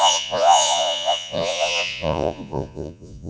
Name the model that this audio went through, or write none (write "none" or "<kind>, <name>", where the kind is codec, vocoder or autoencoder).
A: vocoder, Vocos